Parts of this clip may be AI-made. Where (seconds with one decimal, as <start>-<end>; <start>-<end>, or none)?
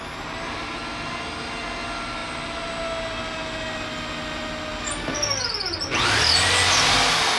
none